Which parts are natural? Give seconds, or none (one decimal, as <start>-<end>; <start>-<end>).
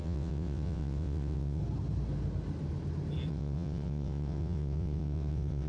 1.6-3.3